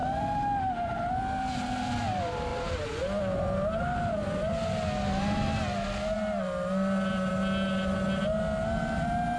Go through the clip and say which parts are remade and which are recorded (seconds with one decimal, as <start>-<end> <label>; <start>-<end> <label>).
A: 0.0-9.4 recorded